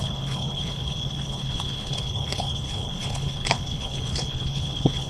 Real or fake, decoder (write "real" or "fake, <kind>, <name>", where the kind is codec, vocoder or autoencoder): fake, codec, HILCodec